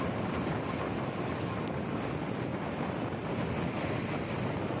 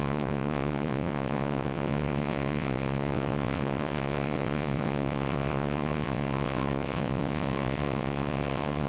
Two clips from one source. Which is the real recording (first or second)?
first